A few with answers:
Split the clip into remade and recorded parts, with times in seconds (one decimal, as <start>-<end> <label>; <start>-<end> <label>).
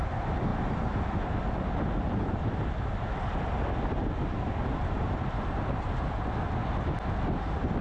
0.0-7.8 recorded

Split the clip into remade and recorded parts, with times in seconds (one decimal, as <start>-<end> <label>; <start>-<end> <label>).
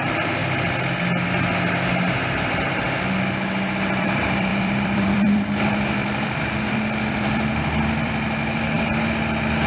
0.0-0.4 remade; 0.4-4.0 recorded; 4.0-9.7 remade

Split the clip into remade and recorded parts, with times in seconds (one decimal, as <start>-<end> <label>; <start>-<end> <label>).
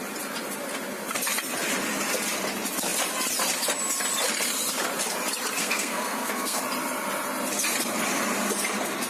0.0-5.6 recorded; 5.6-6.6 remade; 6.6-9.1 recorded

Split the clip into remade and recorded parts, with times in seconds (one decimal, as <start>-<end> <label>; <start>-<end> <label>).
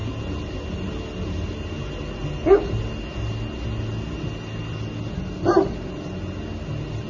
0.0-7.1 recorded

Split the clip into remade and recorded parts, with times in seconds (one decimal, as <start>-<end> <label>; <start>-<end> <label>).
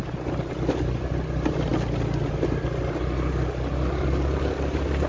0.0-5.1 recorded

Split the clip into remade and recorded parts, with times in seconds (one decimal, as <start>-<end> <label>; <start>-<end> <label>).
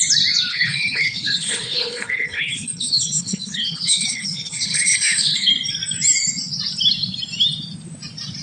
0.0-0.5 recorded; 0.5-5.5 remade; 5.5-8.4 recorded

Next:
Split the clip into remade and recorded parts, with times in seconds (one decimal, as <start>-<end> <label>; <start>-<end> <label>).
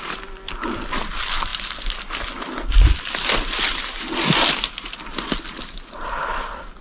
0.0-6.8 recorded